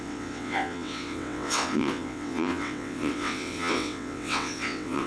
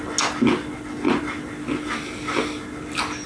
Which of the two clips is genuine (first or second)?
second